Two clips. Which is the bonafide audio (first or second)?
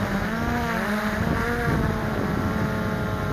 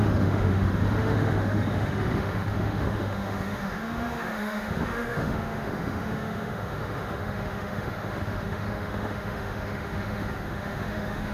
first